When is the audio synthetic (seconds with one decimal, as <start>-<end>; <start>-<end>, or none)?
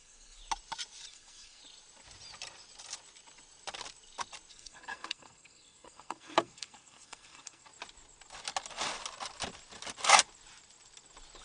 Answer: 0.0-0.4; 1.1-1.6; 4.5-7.7